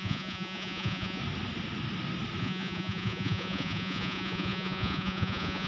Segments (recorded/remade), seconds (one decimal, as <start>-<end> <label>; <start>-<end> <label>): 0.0-1.2 remade; 1.2-2.4 recorded; 2.4-5.7 remade